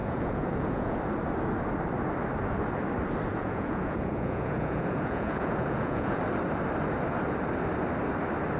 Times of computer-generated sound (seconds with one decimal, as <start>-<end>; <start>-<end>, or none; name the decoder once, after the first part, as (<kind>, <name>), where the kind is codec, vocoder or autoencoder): 0.0-1.0 (vocoder, Vocos); 3.3-6.2